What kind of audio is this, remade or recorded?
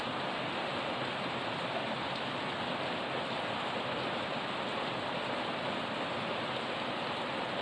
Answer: recorded